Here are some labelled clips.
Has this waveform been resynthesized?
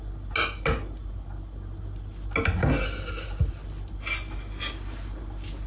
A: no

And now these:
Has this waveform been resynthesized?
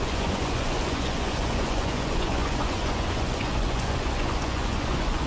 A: yes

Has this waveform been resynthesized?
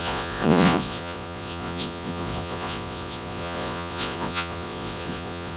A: yes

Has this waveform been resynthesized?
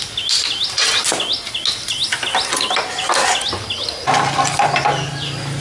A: no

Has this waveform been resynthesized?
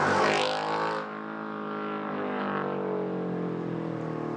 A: no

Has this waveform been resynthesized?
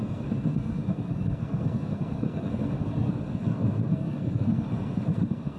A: yes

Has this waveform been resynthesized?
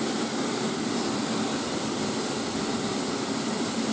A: yes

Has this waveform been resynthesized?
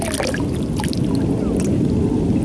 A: no